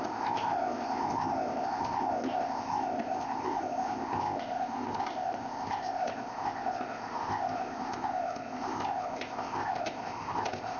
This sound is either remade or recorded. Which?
remade